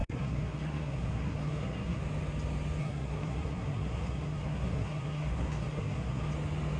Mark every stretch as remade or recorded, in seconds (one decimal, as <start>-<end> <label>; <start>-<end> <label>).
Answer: 0.0-2.0 remade; 2.0-2.8 recorded; 2.8-6.3 remade; 6.3-6.8 recorded